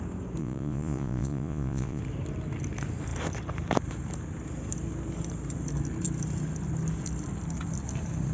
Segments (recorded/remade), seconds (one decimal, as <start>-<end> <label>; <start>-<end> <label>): 0.0-0.4 recorded; 0.4-2.0 remade; 2.0-8.3 recorded